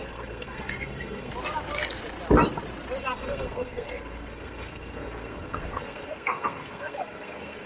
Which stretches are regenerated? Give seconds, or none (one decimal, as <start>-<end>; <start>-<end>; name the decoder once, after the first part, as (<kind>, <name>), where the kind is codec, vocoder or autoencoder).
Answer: 0.0-1.3 (codec, SNAC); 3.0-7.7